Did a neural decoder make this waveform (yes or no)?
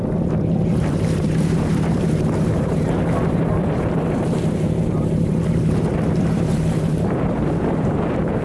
yes